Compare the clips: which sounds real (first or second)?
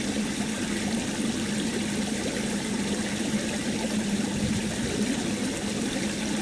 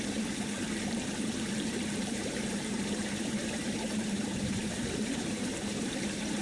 first